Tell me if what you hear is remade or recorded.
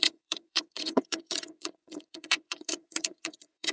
remade